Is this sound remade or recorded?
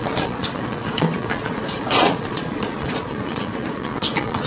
remade